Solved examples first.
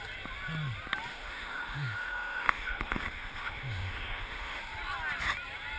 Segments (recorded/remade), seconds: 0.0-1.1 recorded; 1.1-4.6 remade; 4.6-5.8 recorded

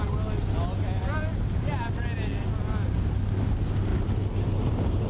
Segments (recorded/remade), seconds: 0.0-1.0 recorded; 1.0-1.7 remade; 1.7-2.4 recorded; 2.4-3.1 remade; 3.1-3.9 recorded; 3.9-5.1 remade

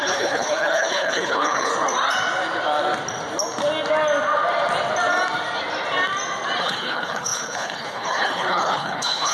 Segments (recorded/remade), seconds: 0.0-1.7 remade; 1.7-6.6 recorded; 6.6-9.3 remade

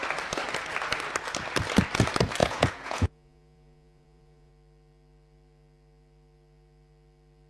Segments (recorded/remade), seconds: 0.0-2.4 recorded; 2.4-4.5 remade; 4.5-7.5 recorded